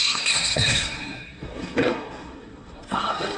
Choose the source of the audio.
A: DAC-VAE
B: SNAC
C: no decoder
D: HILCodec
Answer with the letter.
B